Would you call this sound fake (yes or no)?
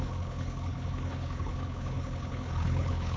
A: yes